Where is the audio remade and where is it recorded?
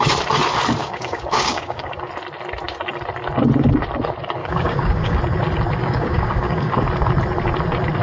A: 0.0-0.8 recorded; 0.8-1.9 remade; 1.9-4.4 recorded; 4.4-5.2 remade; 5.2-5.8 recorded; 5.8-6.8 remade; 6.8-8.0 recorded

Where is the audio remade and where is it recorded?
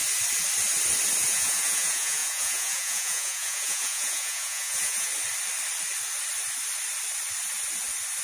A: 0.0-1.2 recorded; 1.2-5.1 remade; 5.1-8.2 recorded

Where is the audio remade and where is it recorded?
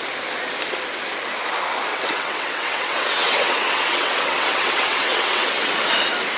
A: 0.0-1.9 recorded; 1.9-5.7 remade; 5.7-6.4 recorded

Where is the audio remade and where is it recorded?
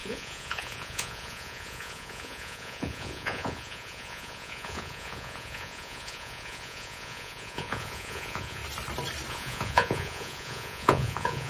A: 0.0-8.6 remade; 8.6-9.3 recorded; 9.3-11.5 remade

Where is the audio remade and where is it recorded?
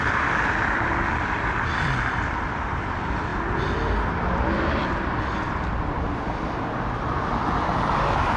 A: 0.0-3.3 remade; 3.3-5.9 recorded; 5.9-8.4 remade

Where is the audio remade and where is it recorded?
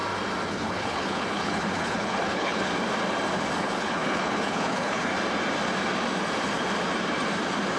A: 0.0-0.5 recorded; 0.5-2.7 remade; 2.7-3.6 recorded; 3.6-5.1 remade; 5.1-7.8 recorded